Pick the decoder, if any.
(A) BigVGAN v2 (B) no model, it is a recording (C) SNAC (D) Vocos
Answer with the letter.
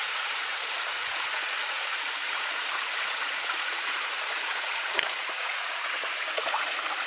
D